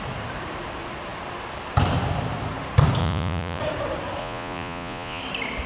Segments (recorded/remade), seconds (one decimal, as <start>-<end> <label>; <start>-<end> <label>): 0.0-3.0 recorded; 3.0-3.6 remade; 3.6-4.2 recorded; 4.2-5.2 remade; 5.2-5.7 recorded